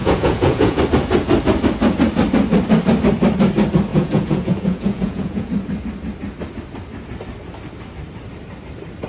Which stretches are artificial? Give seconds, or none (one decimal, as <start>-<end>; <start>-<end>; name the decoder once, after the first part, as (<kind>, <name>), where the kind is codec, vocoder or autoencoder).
0.0-0.8 (vocoder, Vocos); 3.9-5.5